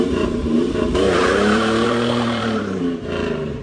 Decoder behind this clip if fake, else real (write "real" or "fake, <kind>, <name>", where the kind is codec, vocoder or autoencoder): fake, vocoder, BigVGAN v2